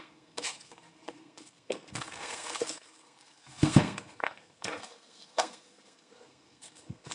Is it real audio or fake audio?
fake